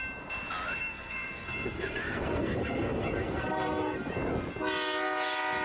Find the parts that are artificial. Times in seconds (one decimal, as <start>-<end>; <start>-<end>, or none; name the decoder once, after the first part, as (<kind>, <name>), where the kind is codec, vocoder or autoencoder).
0.8-4.1 (codec, SNAC)